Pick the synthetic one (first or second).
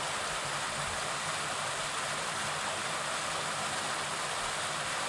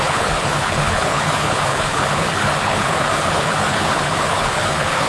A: second